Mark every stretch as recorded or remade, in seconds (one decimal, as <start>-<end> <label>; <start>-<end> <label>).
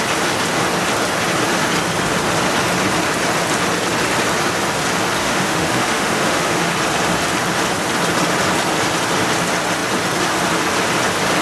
0.0-5.2 recorded; 5.2-6.7 remade; 6.7-11.4 recorded